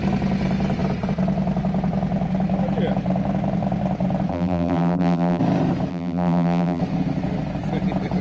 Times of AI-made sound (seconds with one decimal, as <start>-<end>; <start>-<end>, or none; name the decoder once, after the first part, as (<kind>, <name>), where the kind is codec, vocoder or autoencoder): 4.3-5.4 (vocoder, BigVGAN v2); 5.9-6.8